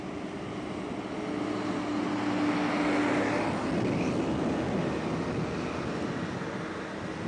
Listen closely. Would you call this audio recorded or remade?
recorded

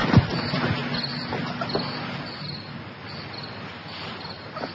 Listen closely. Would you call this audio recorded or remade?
recorded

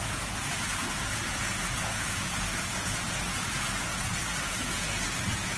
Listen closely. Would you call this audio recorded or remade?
remade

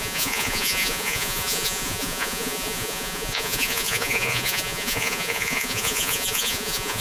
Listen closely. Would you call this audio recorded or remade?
remade